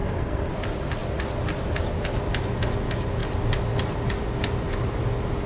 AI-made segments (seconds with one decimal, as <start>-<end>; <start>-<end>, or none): 0.0-0.5